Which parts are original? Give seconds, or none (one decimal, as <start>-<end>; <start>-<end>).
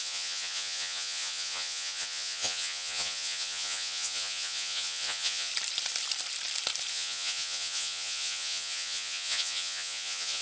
5.5-6.9